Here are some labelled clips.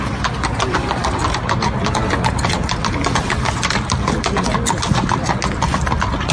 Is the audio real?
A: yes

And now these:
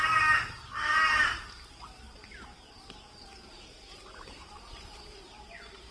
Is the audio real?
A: no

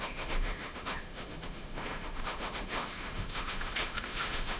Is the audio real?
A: no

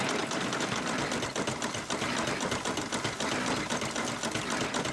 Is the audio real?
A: yes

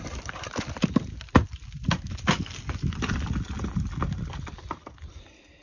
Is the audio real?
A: yes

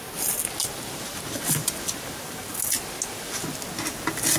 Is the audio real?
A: yes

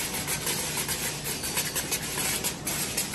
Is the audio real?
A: yes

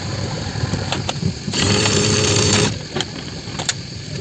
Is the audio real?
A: no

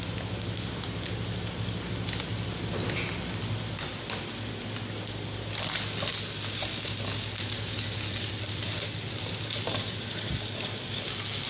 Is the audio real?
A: yes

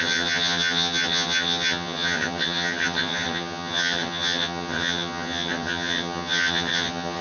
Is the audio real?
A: no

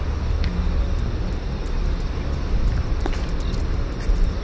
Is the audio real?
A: yes